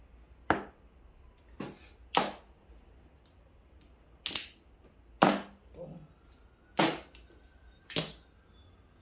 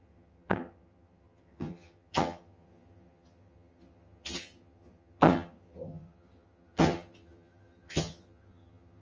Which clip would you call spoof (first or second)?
second